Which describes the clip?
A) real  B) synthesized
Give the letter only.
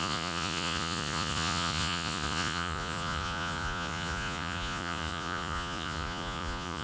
B